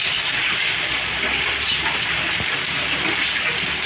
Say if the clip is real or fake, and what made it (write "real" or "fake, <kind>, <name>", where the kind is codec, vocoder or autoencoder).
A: real